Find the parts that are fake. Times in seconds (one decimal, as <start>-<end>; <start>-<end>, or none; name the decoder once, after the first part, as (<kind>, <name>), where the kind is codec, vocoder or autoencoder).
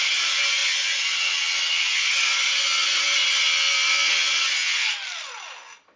none